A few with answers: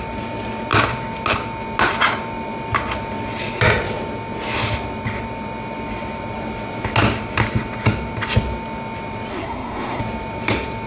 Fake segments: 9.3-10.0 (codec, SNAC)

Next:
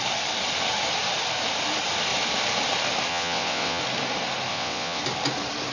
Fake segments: 3.1-3.8 (vocoder, WaveNeXt); 4.5-5.0